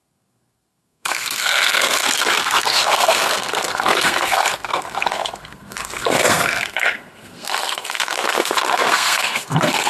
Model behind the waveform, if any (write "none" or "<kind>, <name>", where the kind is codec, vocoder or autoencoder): codec, SNAC